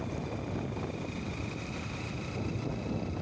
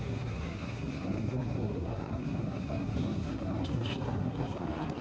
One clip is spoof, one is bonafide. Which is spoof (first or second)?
second